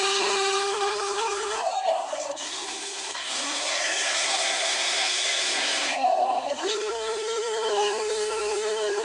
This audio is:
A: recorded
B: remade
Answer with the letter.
B